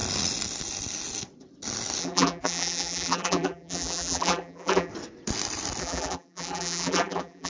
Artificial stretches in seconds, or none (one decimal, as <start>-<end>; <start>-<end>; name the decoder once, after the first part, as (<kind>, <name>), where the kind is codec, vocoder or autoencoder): 2.0-4.9 (vocoder, BigVGAN v2); 5.8-7.5